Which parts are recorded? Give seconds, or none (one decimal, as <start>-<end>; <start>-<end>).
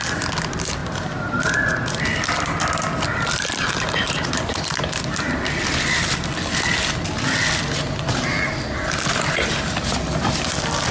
0.0-10.9